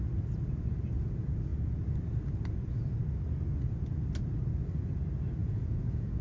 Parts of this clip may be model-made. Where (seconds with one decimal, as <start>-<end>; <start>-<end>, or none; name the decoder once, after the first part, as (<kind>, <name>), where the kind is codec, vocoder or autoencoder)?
5.4-6.2 (vocoder, Vocos)